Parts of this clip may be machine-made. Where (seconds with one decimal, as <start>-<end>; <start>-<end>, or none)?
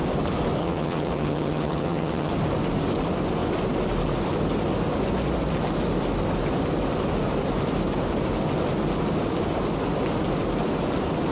0.6-2.3